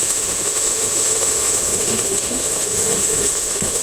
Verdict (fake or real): fake